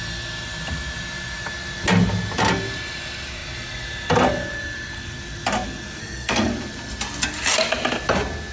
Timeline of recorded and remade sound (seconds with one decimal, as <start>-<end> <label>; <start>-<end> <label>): 0.0-6.0 recorded; 6.0-6.5 remade; 6.5-8.5 recorded